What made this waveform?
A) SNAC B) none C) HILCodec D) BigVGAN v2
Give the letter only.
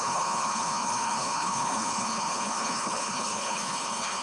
C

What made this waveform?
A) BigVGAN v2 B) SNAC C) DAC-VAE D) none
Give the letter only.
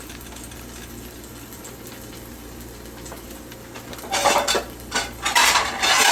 D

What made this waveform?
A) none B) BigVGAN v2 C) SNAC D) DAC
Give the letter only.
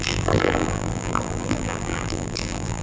B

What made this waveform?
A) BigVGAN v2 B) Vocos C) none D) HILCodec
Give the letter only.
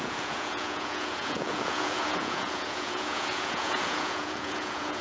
B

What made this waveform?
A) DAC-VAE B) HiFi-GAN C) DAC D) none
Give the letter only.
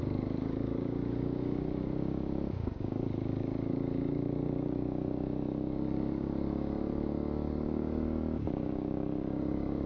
C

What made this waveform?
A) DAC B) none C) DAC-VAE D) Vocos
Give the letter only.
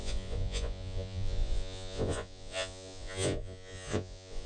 D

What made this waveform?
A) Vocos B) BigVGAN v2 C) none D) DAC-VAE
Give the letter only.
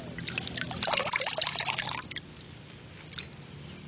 C